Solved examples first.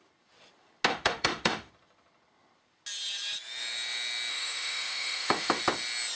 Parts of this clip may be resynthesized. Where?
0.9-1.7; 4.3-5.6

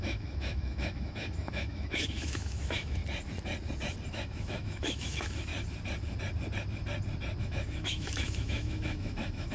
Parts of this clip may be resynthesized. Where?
0.0-3.0; 4.1-5.5; 7.4-9.5